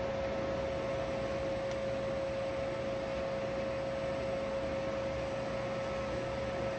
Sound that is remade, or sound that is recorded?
recorded